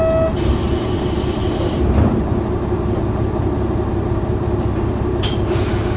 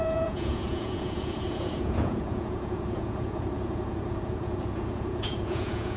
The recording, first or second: first